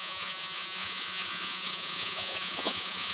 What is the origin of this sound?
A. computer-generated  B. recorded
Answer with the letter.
A